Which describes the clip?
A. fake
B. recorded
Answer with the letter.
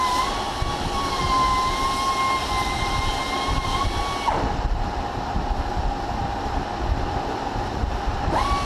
B